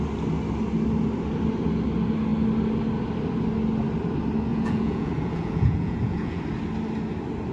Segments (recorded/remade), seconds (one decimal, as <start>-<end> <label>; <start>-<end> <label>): 0.0-4.5 recorded; 4.5-6.4 remade; 6.4-7.5 recorded